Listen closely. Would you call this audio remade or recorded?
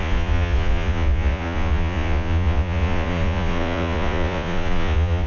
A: remade